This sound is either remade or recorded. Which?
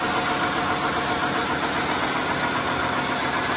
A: recorded